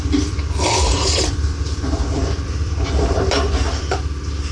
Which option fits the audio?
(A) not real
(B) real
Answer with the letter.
A